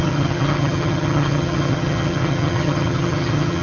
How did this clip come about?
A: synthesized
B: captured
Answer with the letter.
A